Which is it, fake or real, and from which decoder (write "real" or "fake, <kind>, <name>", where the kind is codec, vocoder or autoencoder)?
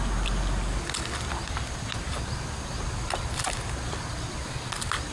real